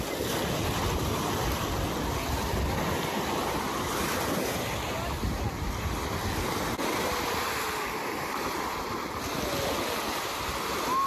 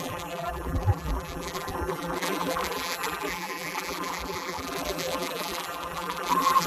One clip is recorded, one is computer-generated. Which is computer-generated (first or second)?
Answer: second